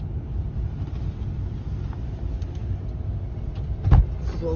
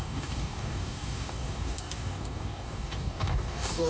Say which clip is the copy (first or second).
second